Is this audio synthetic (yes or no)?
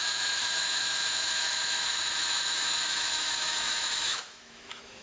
yes